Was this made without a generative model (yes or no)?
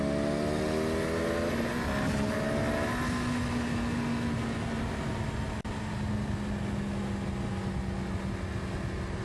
yes